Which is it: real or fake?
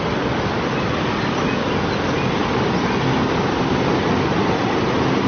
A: real